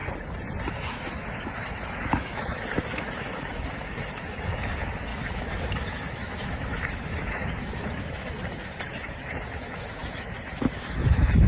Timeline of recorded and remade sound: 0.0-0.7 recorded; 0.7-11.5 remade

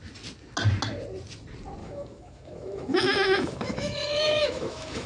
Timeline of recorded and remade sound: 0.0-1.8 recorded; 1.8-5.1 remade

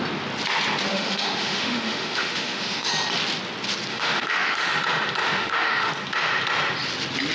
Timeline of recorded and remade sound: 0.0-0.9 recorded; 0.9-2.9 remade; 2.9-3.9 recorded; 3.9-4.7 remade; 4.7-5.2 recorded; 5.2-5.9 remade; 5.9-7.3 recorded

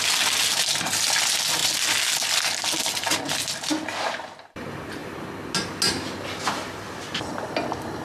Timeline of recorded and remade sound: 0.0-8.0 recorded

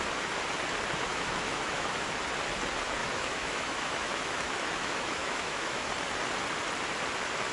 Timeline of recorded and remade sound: 0.0-1.1 recorded; 1.1-2.1 remade; 2.1-3.0 recorded; 3.0-5.9 remade; 5.9-7.5 recorded

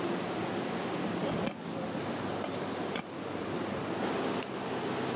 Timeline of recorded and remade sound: 0.0-5.2 recorded

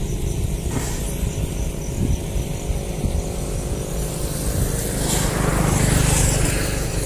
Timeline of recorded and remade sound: 0.0-7.1 recorded

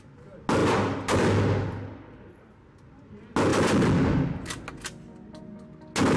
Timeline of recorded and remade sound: 0.0-6.2 recorded